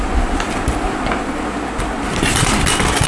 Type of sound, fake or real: real